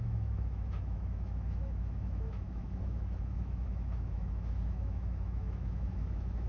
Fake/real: fake